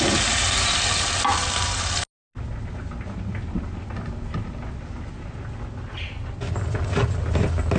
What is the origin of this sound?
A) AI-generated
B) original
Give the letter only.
B